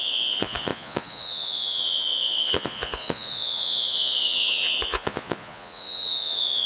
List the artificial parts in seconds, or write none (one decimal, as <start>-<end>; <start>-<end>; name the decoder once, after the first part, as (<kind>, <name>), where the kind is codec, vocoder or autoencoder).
0.0-6.7 (vocoder, Vocos)